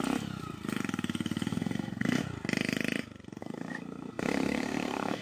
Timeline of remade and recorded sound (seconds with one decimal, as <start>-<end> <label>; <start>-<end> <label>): 0.0-1.5 recorded; 1.5-2.2 remade; 2.2-3.4 recorded; 3.4-5.2 remade